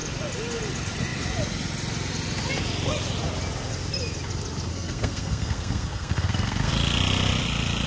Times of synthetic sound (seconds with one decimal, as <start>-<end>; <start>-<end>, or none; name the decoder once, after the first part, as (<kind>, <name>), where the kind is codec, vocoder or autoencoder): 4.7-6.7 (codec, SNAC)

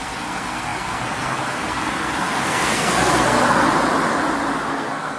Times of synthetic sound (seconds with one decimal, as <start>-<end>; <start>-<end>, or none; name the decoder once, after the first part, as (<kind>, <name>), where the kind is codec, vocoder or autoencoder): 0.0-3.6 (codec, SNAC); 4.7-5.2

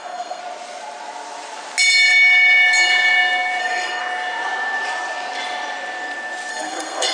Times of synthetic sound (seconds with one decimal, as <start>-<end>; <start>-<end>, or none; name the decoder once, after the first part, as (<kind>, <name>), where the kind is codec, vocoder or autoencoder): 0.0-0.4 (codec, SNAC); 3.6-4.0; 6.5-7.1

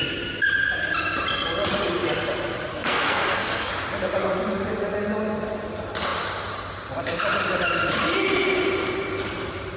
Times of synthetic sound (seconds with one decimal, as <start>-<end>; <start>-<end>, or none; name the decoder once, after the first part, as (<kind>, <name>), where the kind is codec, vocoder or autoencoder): 2.7-3.7 (codec, SNAC)

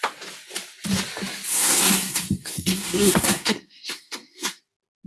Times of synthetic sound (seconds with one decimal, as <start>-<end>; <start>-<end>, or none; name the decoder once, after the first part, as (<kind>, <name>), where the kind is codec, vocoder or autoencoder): 1.5-4.6 (codec, SNAC)

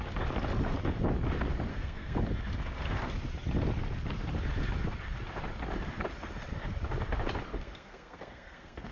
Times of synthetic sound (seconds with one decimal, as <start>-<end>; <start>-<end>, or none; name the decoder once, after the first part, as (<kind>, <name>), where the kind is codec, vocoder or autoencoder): 1.7-2.2 (codec, SNAC); 7.5-8.9